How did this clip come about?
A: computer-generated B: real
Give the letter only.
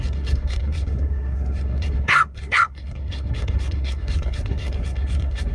A